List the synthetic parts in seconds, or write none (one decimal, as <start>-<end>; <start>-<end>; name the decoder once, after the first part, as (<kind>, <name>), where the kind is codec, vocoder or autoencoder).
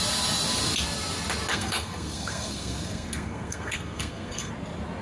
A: 1.5-4.5 (codec, SNAC)